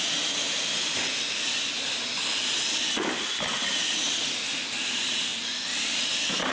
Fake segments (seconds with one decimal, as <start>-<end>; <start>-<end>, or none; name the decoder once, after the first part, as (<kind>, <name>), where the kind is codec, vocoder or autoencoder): none